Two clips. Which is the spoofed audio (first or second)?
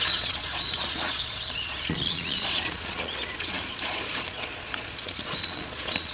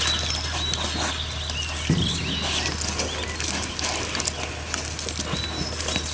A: first